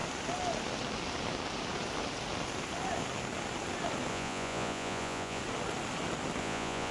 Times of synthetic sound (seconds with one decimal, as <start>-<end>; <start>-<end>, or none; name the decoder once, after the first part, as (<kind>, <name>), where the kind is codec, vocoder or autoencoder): 4.1-5.4 (vocoder, Vocos); 6.4-6.9